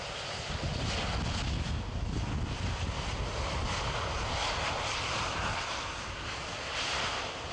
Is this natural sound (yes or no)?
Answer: yes